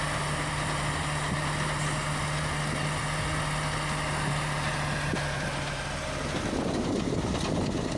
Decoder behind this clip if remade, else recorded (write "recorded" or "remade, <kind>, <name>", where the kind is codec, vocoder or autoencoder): recorded